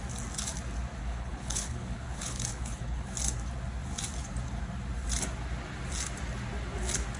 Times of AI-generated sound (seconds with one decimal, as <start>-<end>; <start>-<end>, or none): 1.0-3.1